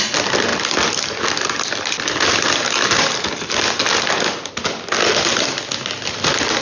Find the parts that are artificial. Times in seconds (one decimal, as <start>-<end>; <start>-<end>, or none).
none